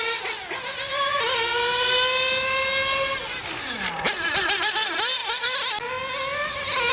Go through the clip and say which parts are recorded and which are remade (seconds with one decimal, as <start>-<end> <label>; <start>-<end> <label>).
0.0-6.9 recorded